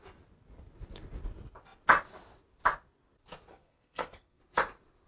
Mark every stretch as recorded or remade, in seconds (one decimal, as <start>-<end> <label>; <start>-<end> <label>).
0.0-3.5 recorded; 3.5-4.4 remade; 4.4-5.1 recorded